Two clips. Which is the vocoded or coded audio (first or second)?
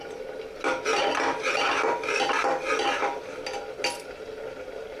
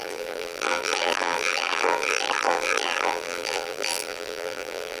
second